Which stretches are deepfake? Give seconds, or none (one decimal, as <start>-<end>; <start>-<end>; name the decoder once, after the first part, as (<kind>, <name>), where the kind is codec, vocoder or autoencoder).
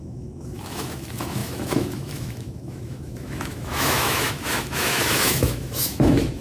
0.0-6.4 (autoencoder, DAC-VAE)